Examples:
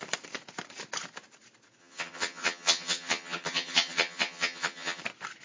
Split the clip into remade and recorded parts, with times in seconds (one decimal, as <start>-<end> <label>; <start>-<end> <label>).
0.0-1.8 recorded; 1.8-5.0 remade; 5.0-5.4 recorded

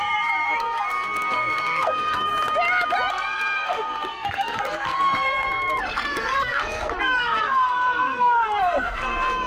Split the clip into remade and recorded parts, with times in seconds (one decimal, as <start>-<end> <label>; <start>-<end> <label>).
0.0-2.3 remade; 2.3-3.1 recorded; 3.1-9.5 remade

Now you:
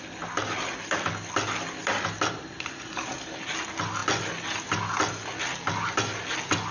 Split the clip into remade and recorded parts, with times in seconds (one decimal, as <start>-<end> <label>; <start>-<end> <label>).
0.0-6.7 recorded